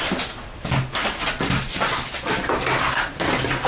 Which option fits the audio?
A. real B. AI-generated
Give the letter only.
A